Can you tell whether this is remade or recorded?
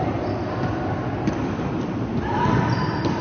remade